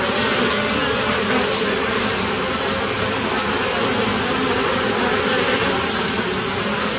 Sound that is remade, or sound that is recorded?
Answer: recorded